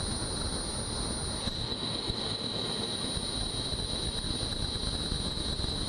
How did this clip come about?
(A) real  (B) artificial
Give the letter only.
A